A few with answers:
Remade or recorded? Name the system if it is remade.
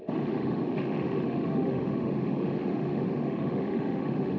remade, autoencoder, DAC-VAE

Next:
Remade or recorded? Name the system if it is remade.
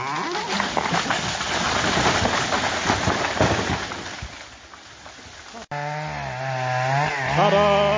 recorded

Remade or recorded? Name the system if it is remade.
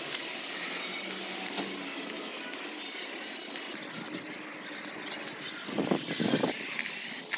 recorded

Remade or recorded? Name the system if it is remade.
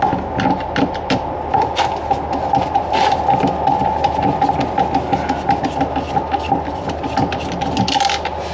recorded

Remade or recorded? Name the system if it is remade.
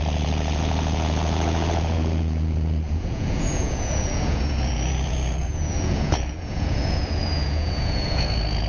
remade, vocoder, Vocos